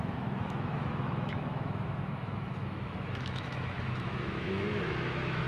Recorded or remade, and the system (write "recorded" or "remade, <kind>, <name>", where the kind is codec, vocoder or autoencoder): remade, autoencoder, DAC-VAE